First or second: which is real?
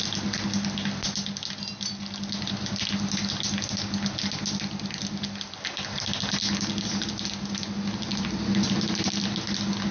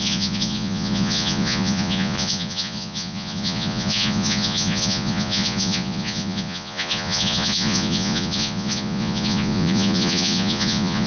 first